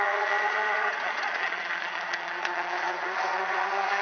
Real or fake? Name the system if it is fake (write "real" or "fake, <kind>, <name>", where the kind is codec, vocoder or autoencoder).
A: fake, vocoder, Vocos